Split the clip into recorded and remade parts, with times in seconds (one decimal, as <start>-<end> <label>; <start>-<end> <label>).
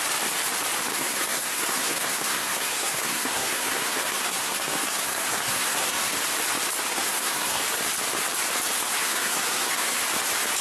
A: 0.0-0.9 recorded; 0.9-6.1 remade; 6.1-6.9 recorded; 6.9-7.6 remade; 7.6-8.8 recorded; 8.8-10.0 remade; 10.0-10.6 recorded